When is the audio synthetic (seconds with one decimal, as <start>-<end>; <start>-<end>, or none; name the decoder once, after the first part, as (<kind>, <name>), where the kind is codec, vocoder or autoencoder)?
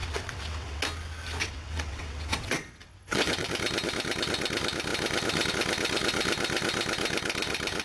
0.0-0.8 (vocoder, WaveNeXt); 1.4-3.5